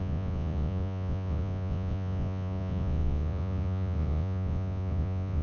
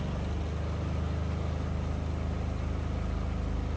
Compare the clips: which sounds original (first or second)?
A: second